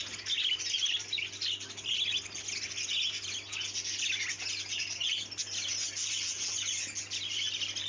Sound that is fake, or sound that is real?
real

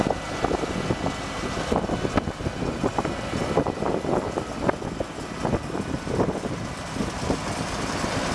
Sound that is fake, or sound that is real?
real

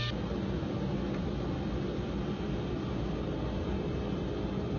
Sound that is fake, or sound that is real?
real